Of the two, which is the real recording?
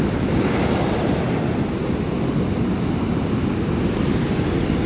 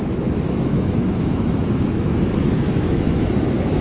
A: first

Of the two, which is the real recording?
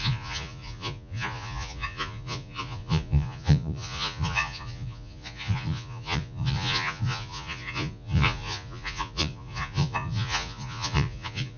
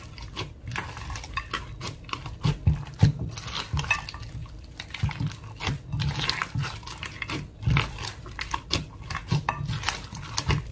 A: second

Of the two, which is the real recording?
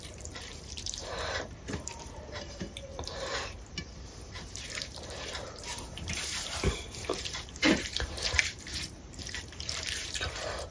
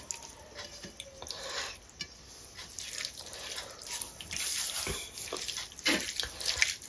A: second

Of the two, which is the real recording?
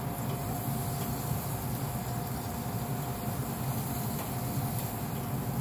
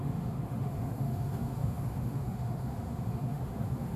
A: first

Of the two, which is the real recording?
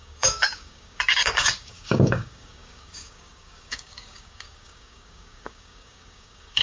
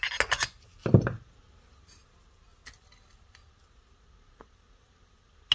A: second